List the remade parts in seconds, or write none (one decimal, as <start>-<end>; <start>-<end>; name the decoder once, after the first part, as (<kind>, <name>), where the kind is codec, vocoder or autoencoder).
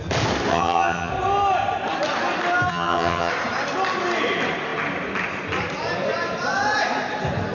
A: 0.5-1.1 (vocoder, HiFi-GAN); 2.7-3.3